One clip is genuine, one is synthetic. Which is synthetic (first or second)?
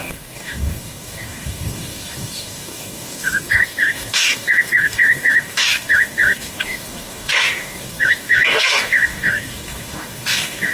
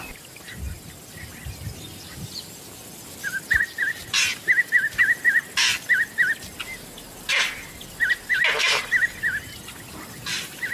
first